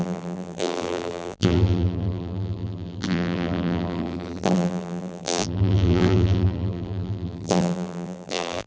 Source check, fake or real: fake